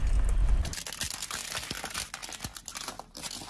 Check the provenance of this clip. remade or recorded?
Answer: recorded